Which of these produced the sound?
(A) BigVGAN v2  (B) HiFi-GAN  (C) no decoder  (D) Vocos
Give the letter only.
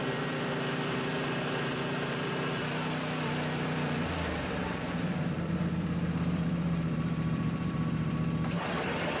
A